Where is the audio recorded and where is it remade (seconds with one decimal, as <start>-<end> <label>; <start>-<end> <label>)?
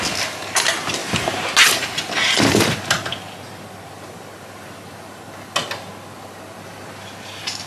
0.0-7.7 recorded